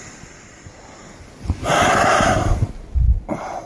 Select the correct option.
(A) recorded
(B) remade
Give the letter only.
A